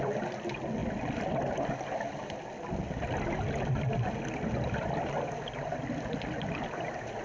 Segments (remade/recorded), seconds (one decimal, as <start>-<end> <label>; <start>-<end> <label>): 0.0-7.2 recorded